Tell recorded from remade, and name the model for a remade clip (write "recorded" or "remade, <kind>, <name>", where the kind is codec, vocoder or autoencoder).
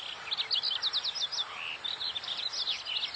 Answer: recorded